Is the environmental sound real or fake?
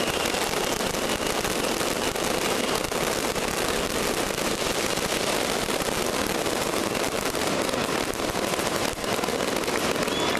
real